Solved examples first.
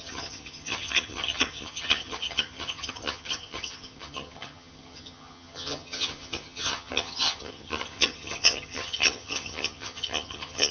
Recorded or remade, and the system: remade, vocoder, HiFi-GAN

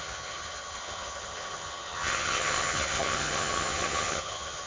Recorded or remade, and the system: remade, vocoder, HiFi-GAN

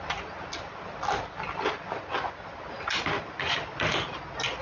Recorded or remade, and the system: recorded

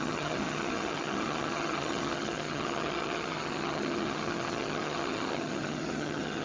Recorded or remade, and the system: remade, vocoder, HiFi-GAN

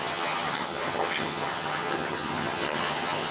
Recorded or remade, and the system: remade, vocoder, HiFi-GAN